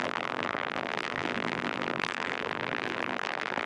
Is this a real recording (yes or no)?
no